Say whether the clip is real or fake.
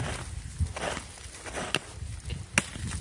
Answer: real